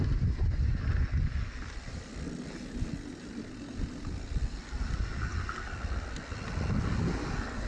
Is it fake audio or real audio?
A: real